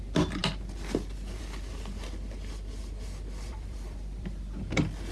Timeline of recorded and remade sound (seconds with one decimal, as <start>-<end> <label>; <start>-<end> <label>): 0.0-3.5 recorded; 3.5-4.6 remade; 4.6-5.1 recorded